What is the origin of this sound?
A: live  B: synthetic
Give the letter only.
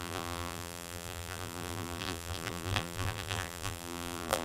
B